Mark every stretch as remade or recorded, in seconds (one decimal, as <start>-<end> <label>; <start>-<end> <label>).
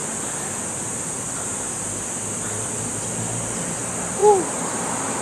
0.0-3.1 remade; 3.1-5.2 recorded